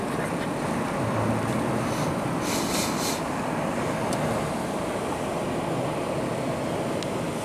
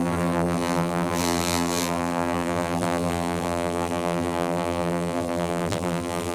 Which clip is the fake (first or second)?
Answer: second